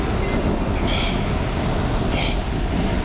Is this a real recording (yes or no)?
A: yes